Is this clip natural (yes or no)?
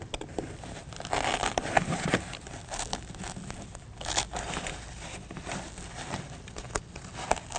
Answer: yes